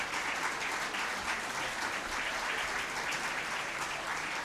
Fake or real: real